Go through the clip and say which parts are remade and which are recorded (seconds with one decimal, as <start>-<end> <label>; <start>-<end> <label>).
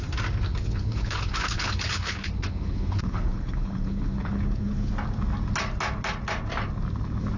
0.0-0.5 recorded; 0.5-4.9 remade; 4.9-7.4 recorded